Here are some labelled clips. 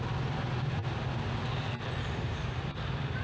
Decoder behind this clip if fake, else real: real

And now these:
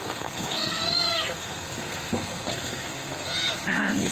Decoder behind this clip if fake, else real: fake, codec, SNAC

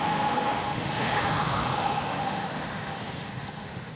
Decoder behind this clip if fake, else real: fake, autoencoder, DAC-VAE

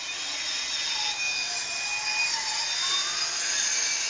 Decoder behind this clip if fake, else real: real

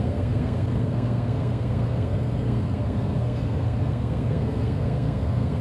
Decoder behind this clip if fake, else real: fake, codec, SNAC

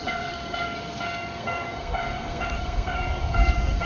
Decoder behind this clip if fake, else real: fake, codec, SNAC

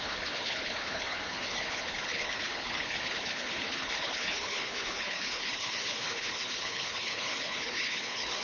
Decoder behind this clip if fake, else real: fake, codec, HILCodec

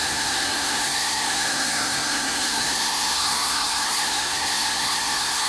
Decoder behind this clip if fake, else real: fake, codec, SNAC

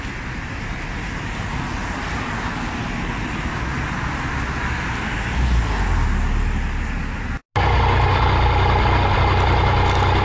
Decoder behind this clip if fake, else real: real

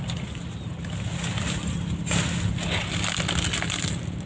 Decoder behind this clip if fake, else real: real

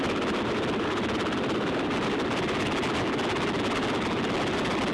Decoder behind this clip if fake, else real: real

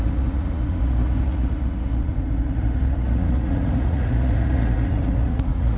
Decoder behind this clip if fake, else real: fake, vocoder, Vocos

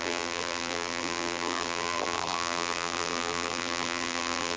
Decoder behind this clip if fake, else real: fake, vocoder, BigVGAN v2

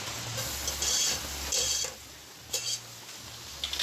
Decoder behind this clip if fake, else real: real